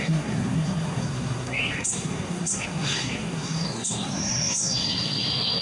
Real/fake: fake